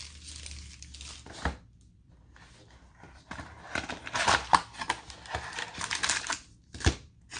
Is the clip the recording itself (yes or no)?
yes